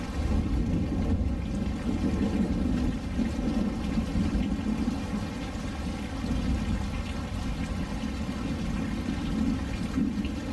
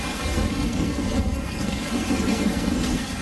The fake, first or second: second